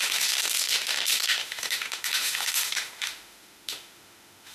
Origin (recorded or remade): remade